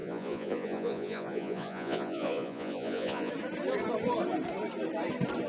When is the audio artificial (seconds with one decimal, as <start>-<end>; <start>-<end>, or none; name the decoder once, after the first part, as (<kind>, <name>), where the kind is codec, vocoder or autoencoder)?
0.0-3.3 (vocoder, Vocos)